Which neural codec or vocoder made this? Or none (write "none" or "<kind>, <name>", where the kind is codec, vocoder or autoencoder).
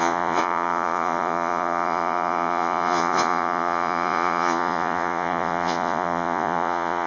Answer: vocoder, Vocos